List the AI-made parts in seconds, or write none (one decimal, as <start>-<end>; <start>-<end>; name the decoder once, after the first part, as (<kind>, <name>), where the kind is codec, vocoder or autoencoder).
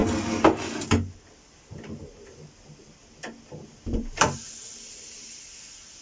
3.6-6.0 (vocoder, BigVGAN v2)